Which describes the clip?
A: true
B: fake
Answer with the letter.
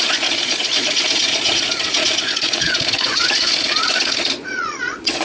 B